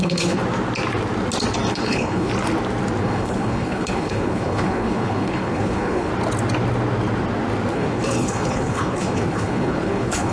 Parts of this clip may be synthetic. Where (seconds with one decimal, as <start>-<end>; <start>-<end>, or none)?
0.0-0.4; 1.7-2.3; 3.0-6.1; 7.7-10.3